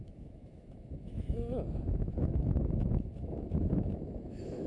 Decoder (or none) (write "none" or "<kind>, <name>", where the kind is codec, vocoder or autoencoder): autoencoder, DAC-VAE